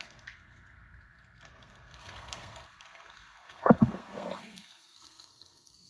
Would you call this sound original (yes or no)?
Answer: no